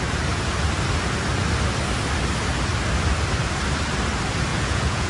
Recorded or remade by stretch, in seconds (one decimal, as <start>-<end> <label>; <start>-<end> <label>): 0.0-4.5 recorded; 4.5-5.1 remade